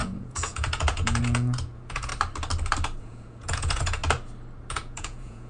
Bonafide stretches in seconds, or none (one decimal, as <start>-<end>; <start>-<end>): 2.1-3.0; 4.0-4.7